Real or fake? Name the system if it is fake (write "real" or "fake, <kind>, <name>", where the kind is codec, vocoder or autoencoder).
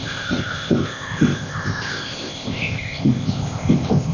fake, codec, ZipCodec